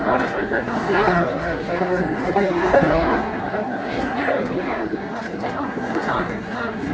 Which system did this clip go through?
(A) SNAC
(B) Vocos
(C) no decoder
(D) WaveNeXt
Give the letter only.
A